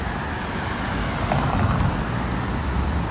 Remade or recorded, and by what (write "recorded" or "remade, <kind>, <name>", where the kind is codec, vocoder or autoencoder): recorded